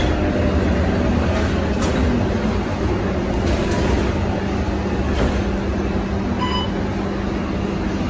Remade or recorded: recorded